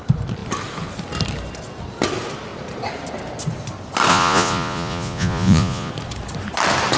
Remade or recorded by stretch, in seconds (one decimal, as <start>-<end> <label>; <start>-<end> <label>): 0.0-4.1 recorded; 4.1-5.9 remade; 5.9-7.0 recorded